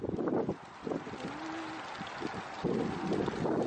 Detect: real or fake real